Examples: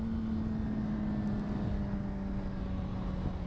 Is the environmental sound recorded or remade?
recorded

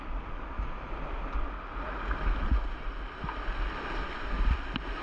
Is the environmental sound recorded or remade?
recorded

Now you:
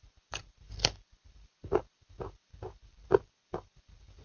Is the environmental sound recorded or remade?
remade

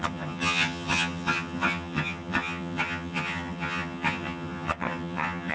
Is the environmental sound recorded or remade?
remade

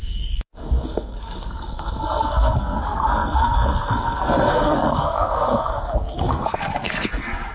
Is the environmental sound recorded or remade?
remade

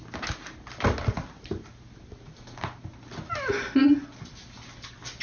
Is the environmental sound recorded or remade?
recorded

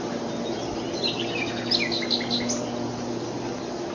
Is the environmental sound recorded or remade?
recorded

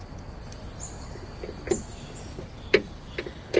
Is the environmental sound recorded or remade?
recorded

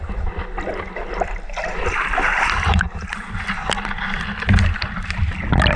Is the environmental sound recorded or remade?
recorded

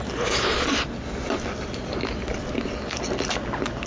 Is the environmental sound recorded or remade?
recorded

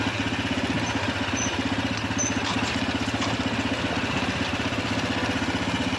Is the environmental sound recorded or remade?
recorded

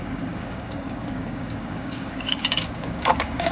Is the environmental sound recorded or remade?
remade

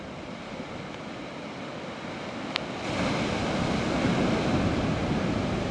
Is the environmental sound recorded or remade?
recorded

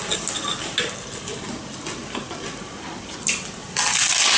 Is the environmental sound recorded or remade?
recorded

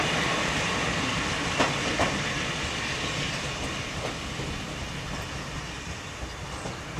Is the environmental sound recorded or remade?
recorded